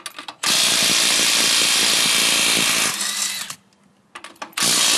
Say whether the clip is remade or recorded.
recorded